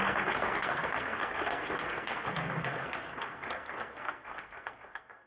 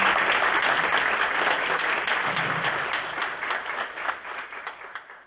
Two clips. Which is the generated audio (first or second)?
first